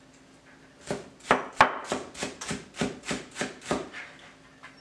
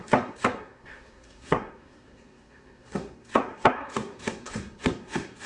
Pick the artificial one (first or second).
second